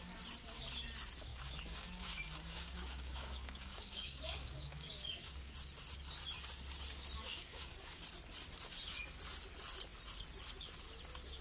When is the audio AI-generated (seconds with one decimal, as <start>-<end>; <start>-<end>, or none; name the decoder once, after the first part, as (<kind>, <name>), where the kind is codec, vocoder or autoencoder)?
1.3-5.5 (codec, DAC); 7.2-8.0